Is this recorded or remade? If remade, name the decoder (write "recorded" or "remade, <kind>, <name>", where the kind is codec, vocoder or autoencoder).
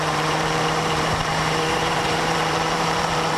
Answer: remade, vocoder, BigVGAN v2